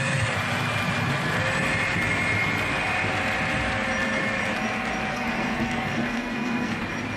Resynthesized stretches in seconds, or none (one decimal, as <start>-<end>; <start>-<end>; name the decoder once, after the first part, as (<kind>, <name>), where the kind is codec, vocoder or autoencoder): 5.1-6.8 (codec, SNAC)